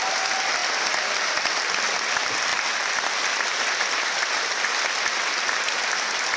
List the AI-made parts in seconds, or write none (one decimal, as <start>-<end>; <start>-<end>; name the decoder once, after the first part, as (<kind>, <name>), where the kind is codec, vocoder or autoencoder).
none